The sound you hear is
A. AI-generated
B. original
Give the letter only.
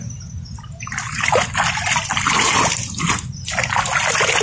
B